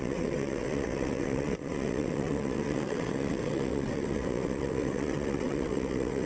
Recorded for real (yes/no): no